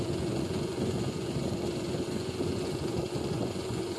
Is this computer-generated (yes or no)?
yes